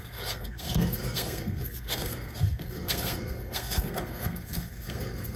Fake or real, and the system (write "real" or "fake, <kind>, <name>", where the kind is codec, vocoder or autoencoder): fake, codec, SNAC